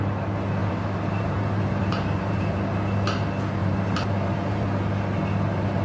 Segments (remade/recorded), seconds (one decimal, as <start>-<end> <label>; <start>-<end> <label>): 0.0-0.6 recorded; 0.6-2.6 remade; 2.6-3.6 recorded; 3.6-4.6 remade; 4.6-5.8 recorded